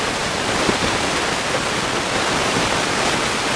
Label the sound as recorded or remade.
remade